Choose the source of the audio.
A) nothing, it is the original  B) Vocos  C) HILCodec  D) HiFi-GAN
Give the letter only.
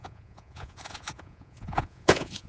B